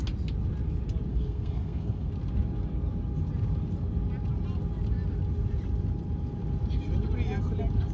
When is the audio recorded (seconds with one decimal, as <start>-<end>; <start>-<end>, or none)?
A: 0.0-1.1; 2.1-7.9